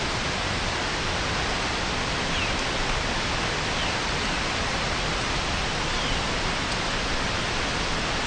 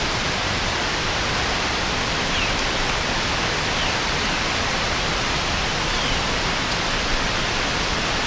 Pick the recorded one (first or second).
first